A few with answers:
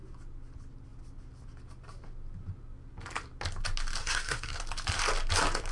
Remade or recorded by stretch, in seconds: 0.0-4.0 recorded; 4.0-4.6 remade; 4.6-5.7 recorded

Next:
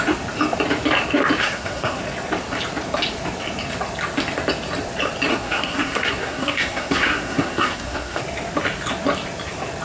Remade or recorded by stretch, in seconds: 0.0-1.4 recorded; 1.4-2.0 remade; 2.0-5.3 recorded; 5.3-8.2 remade; 8.2-9.8 recorded